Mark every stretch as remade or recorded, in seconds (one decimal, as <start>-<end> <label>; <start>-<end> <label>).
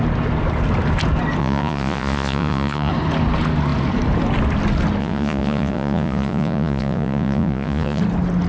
0.0-1.4 recorded; 1.4-2.9 remade; 2.9-5.0 recorded; 5.0-8.0 remade; 8.0-8.5 recorded